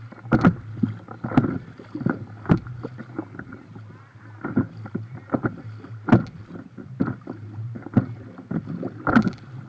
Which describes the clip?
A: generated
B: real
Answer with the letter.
B